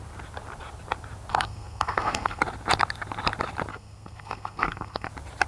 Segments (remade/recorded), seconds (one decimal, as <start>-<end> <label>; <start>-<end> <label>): 0.0-1.3 recorded; 1.3-2.4 remade; 2.4-3.7 recorded; 3.7-5.1 remade; 5.1-5.5 recorded